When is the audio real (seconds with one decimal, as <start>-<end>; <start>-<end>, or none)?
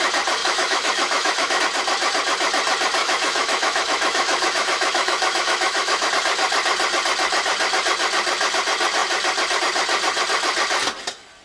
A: 0.0-0.4; 1.6-3.0; 6.1-11.4